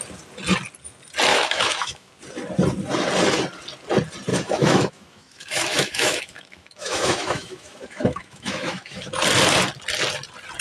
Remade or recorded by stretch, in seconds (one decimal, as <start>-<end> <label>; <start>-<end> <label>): 0.0-1.3 recorded; 1.3-2.1 remade; 2.1-4.3 recorded; 4.3-9.1 remade; 9.1-10.6 recorded